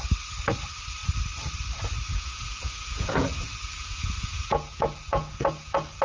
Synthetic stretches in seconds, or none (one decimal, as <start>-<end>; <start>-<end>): 2.1-6.0

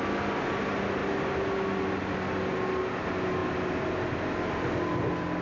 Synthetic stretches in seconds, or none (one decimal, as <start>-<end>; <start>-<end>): none